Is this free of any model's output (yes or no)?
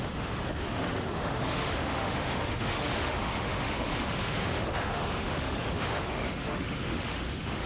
no